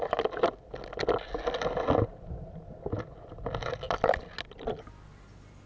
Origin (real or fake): real